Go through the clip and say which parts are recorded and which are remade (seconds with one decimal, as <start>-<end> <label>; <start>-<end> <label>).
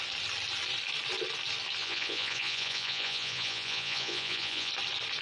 0.0-1.8 recorded; 1.8-4.7 remade; 4.7-5.2 recorded